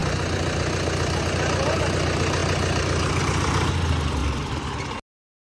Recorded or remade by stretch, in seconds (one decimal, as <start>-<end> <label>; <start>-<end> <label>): 0.0-5.4 recorded